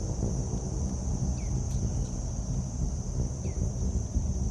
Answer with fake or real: real